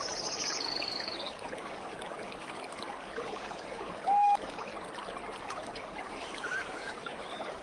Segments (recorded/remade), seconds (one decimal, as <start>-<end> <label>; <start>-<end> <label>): 0.0-4.7 remade; 4.7-5.4 recorded; 5.4-7.6 remade